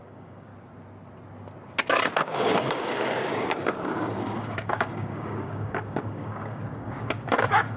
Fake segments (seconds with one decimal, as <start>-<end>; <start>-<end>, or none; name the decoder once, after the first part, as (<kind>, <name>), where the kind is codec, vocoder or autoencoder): 0.0-0.5 (codec, DAC); 2.1-7.8